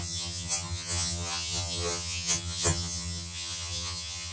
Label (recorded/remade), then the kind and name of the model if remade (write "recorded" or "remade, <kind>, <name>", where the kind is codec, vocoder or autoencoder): remade, vocoder, HiFi-GAN